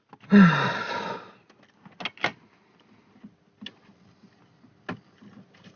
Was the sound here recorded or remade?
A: recorded